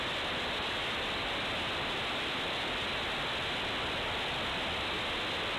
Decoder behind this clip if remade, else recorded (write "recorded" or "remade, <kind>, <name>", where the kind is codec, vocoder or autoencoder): recorded